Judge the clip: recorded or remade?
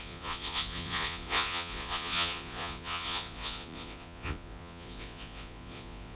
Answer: remade